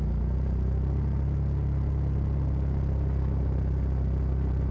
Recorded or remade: recorded